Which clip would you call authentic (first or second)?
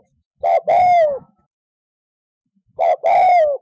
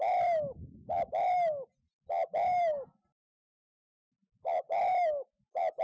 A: second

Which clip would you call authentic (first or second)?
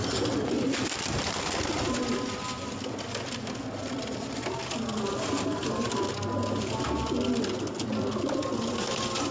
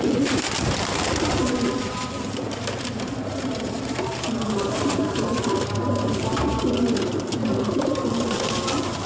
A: first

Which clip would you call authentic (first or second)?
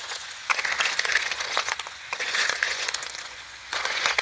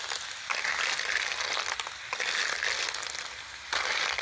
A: second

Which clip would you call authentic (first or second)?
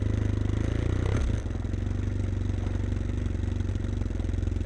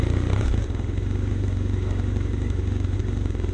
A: first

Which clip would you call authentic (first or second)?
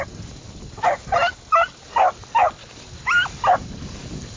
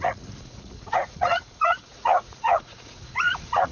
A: first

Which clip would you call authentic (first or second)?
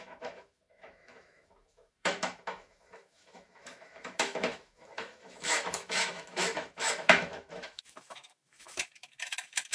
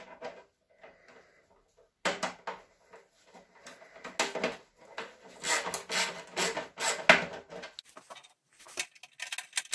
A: second